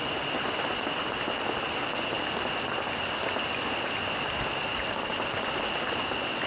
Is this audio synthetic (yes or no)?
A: no